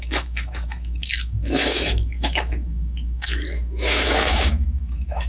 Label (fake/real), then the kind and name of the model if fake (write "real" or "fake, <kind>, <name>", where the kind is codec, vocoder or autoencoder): fake, autoencoder, DAC-VAE